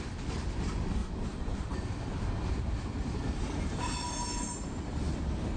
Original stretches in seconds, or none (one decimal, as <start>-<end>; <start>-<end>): 0.0-1.0; 4.4-5.6